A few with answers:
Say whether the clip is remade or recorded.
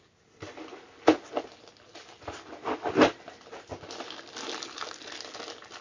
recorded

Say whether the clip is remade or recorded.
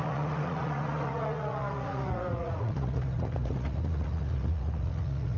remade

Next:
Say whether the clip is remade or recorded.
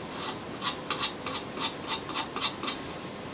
recorded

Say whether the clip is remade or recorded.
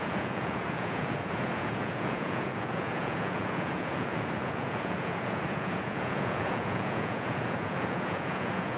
remade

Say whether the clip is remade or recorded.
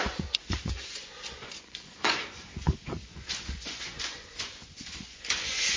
remade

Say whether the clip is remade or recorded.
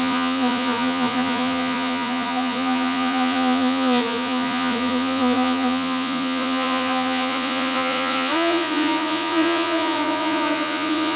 remade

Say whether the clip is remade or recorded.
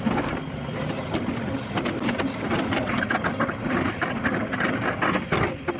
recorded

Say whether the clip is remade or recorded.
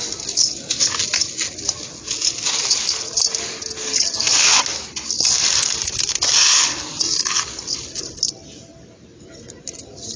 recorded